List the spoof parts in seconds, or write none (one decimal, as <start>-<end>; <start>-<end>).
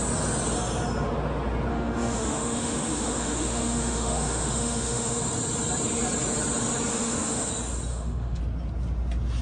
1.7-5.2; 6.9-7.5; 7.9-8.4